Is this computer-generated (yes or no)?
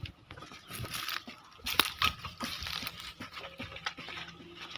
no